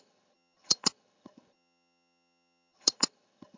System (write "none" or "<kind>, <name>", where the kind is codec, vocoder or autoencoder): vocoder, HiFi-GAN